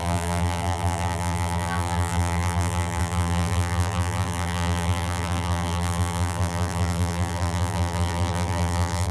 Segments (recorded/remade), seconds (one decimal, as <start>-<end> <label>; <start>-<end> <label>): 0.0-9.1 remade